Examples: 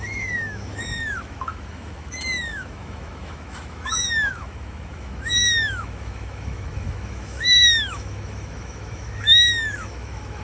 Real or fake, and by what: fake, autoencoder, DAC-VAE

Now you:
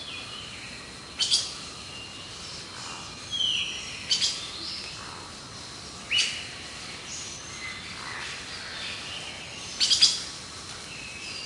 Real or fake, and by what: real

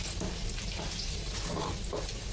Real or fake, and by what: real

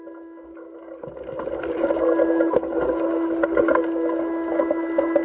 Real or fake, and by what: real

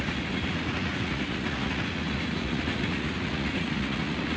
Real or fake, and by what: fake, vocoder, Vocos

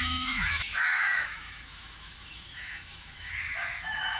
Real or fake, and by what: fake, autoencoder, DAC-VAE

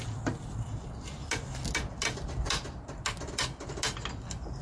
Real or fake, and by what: real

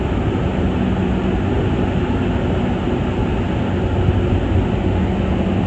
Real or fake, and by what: real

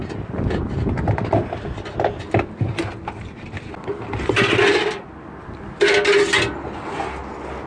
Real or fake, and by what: real